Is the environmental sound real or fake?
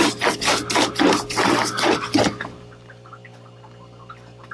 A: real